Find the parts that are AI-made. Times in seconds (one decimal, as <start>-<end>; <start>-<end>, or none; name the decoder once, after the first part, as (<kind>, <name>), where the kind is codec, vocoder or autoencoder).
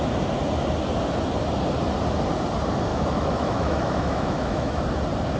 2.9-4.8 (autoencoder, DAC-VAE)